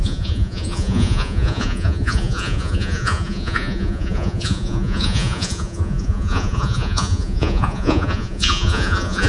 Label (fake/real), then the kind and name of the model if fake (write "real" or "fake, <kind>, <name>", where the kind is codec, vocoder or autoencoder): fake, vocoder, Vocos